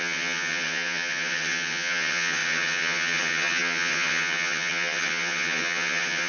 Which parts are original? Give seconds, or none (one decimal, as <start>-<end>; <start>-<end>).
none